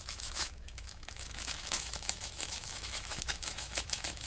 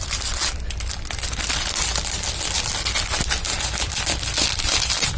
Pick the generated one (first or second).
first